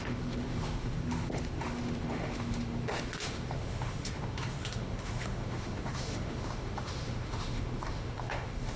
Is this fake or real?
fake